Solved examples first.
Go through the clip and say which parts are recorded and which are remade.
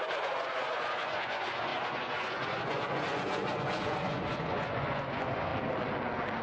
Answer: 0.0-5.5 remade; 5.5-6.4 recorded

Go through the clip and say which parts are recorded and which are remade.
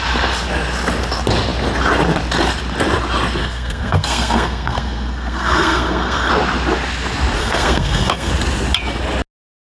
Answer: 0.0-3.4 recorded; 3.4-6.3 remade; 6.3-7.4 recorded; 7.4-8.3 remade; 8.3-9.7 recorded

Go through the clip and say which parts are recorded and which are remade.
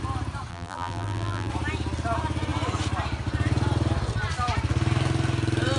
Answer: 0.0-0.5 recorded; 0.5-1.5 remade; 1.5-5.8 recorded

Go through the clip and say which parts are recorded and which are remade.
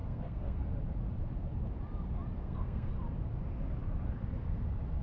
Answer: 0.0-0.6 remade; 0.6-2.4 recorded; 2.4-2.9 remade; 2.9-5.0 recorded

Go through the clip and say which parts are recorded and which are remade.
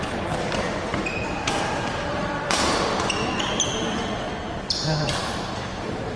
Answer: 0.0-0.9 recorded; 0.9-1.5 remade; 1.5-2.1 recorded; 2.1-2.8 remade; 2.8-5.2 recorded; 5.2-6.2 remade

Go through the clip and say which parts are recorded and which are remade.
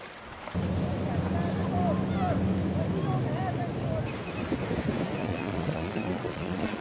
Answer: 0.0-5.2 recorded; 5.2-6.8 remade